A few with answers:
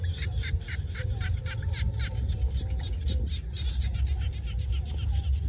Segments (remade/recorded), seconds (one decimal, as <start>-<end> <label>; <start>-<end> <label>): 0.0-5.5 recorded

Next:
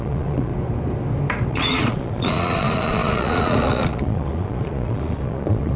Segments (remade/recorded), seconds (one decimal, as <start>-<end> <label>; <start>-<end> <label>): 0.0-0.5 remade; 0.5-1.5 recorded; 1.5-5.8 remade

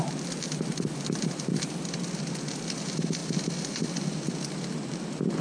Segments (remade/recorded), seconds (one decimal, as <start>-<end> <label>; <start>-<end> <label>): 0.0-5.4 recorded

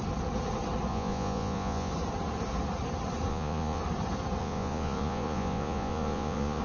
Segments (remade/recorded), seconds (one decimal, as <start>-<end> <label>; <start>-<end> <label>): 0.0-0.9 recorded; 0.9-1.9 remade; 1.9-3.3 recorded; 3.3-3.8 remade; 3.8-4.4 recorded; 4.4-6.6 remade